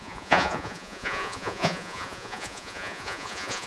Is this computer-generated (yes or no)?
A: yes